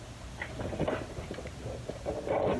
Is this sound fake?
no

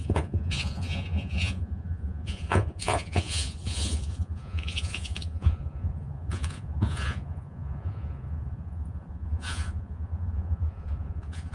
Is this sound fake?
yes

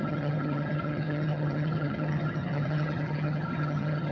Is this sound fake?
yes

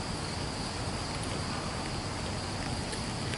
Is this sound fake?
no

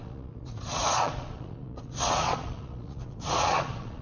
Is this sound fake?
yes